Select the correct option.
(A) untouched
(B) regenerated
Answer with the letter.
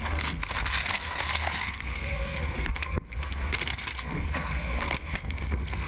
B